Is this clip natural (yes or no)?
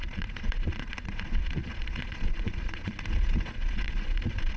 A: no